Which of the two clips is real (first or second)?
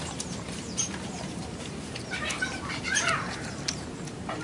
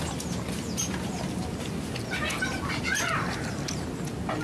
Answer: second